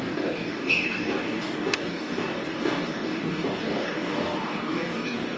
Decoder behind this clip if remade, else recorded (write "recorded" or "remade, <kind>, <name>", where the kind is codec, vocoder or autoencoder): remade, codec, DAC